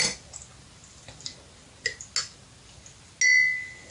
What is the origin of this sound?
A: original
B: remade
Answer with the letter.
A